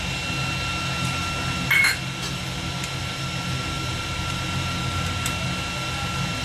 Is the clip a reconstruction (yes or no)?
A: no